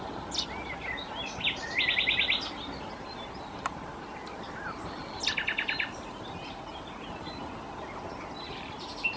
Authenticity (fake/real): real